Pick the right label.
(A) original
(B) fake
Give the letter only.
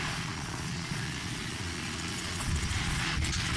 B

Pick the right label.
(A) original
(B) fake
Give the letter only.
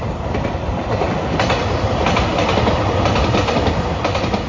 B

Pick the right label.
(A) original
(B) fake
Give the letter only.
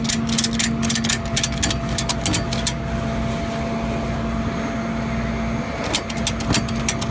A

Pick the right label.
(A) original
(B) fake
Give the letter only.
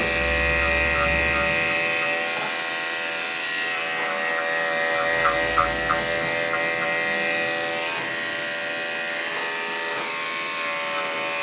A